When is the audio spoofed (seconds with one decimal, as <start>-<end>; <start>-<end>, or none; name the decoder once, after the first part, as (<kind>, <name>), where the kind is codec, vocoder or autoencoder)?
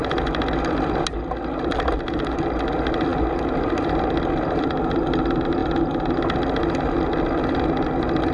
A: none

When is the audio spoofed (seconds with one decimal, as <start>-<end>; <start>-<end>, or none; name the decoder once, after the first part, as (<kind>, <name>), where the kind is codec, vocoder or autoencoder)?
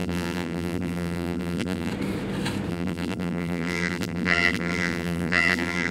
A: 0.0-1.9 (vocoder, BigVGAN v2); 2.7-5.9